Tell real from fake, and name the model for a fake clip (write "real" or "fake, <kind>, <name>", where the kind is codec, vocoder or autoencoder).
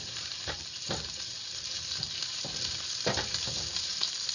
fake, vocoder, BigVGAN v2